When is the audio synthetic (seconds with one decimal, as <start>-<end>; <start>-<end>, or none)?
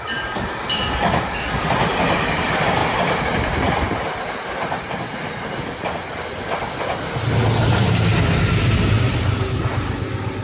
none